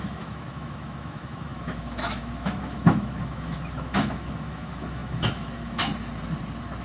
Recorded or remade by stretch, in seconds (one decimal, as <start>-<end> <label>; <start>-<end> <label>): 0.0-5.9 remade; 5.9-6.8 recorded